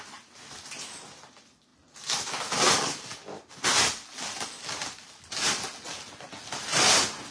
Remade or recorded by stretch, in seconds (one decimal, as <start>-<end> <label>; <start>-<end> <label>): 0.0-7.3 recorded